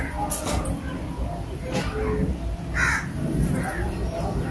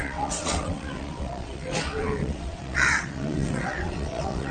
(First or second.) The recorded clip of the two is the first